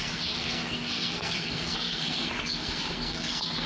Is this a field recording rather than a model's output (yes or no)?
no